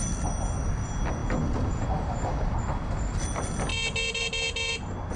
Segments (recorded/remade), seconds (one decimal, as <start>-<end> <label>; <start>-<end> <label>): 0.0-5.2 recorded